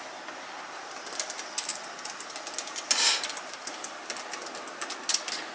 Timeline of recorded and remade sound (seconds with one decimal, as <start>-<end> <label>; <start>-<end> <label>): 0.0-5.5 recorded